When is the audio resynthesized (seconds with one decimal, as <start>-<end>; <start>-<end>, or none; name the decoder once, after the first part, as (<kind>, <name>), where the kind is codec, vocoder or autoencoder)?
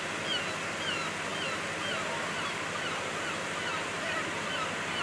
3.7-4.5 (vocoder, BigVGAN v2)